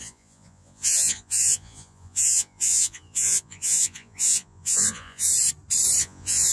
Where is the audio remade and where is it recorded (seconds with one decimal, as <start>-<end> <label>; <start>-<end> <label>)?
0.0-5.3 remade; 5.3-6.0 recorded; 6.0-6.5 remade